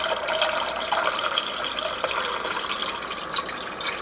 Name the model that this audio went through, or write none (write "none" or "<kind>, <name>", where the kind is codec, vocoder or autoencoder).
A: none